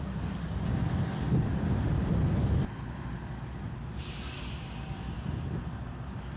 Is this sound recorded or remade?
recorded